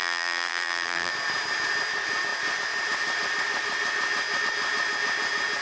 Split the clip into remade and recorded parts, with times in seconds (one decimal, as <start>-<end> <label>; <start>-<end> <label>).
0.0-1.1 remade; 1.1-5.6 recorded